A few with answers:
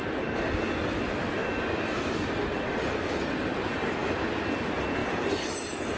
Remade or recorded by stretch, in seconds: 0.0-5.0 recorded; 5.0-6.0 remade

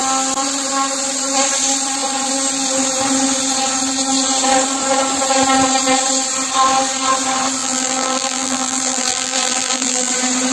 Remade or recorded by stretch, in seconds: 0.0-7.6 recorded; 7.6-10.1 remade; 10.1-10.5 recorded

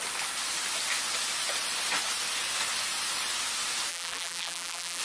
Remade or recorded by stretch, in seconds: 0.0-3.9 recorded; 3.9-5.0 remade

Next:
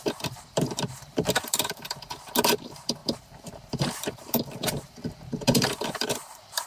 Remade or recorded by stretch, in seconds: 0.0-6.7 remade